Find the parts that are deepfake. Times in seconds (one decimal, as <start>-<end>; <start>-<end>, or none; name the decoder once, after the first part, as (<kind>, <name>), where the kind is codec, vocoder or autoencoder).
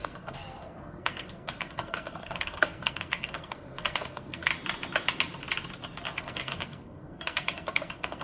0.0-4.5 (codec, SNAC); 6.2-8.2